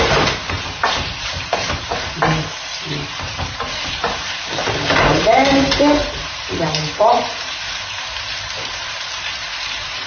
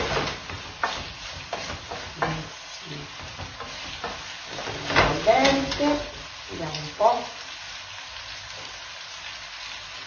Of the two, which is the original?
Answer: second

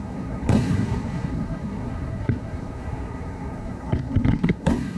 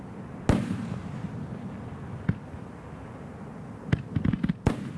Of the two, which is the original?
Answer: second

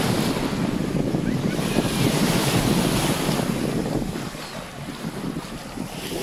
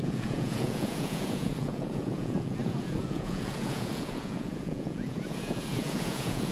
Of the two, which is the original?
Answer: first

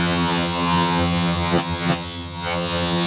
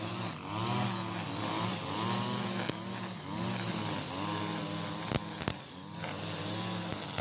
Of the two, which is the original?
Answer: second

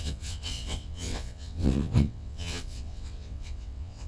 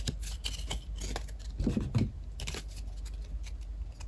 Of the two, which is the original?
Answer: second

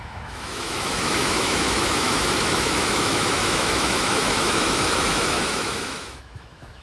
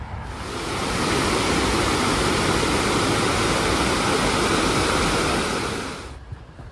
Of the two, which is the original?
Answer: second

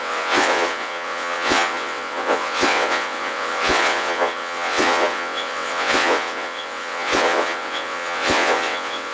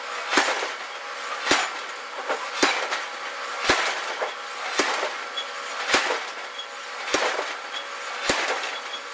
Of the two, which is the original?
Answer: second